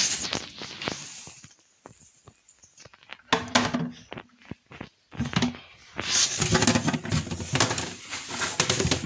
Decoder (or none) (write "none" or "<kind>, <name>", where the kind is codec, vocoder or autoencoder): none